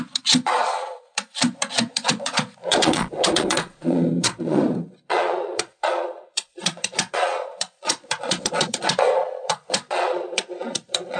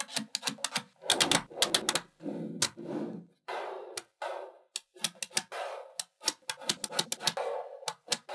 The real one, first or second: second